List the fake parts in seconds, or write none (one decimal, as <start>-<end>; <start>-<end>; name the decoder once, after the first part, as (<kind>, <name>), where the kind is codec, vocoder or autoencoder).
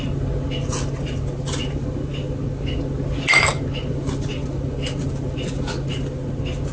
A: none